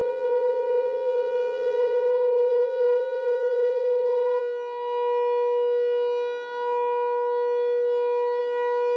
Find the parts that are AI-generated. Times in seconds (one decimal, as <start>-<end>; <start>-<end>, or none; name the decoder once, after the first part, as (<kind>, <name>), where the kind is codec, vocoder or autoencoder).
0.0-4.4 (vocoder, BigVGAN v2)